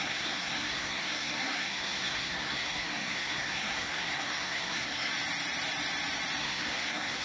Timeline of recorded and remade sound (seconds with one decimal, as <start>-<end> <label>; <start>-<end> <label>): 0.0-5.1 remade; 5.1-6.4 recorded; 6.4-7.2 remade